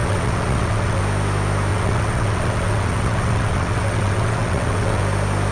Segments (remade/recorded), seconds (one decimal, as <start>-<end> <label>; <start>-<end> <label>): 0.0-1.0 remade; 1.0-1.7 recorded; 1.7-5.0 remade; 5.0-5.5 recorded

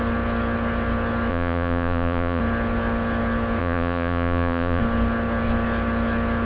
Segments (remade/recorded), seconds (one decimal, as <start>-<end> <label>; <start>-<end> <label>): 0.0-1.3 recorded; 1.3-2.4 remade; 2.4-3.6 recorded; 3.6-4.8 remade; 4.8-6.5 recorded